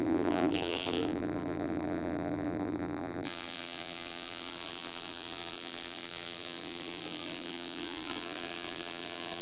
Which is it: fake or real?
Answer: fake